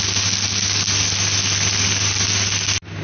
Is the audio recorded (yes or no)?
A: yes